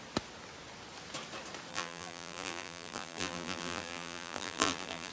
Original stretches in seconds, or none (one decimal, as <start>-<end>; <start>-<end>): 0.0-1.7